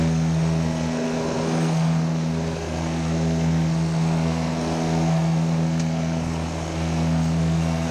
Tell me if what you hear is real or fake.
fake